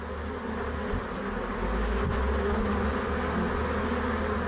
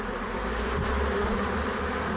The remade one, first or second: second